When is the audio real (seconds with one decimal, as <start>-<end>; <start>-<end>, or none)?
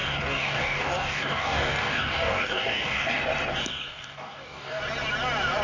3.2-3.7; 4.8-5.6